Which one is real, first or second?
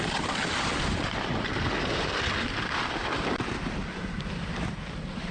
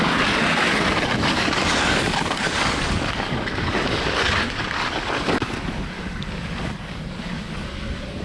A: first